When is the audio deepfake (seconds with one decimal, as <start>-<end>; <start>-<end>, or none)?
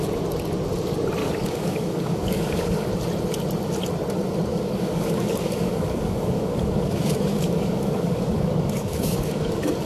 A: 1.2-2.9; 4.5-9.9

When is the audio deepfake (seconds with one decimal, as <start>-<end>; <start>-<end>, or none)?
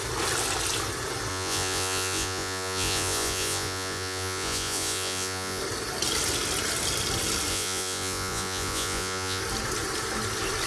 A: 1.3-5.6; 7.5-9.4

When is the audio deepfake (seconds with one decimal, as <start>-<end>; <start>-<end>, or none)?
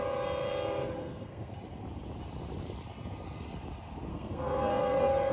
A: 1.0-1.5; 4.1-5.3